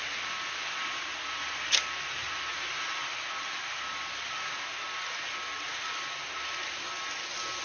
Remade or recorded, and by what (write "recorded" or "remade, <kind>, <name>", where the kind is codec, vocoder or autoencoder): recorded